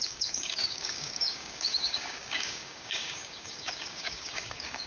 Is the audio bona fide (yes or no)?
no